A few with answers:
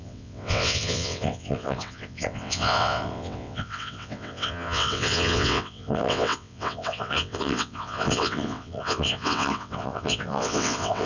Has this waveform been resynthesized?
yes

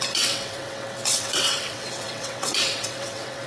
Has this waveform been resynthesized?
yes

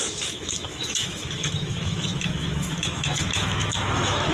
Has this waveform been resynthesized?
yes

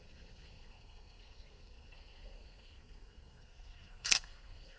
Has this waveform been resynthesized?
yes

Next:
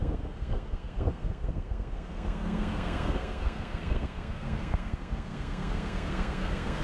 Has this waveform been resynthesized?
yes